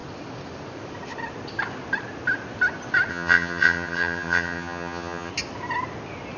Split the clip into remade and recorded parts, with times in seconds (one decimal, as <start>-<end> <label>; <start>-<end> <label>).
0.0-3.1 recorded; 3.1-5.3 remade; 5.3-6.4 recorded